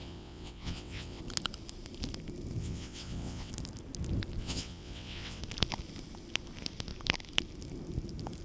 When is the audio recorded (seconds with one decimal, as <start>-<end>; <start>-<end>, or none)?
1.2-2.6; 3.5-4.4; 5.4-8.4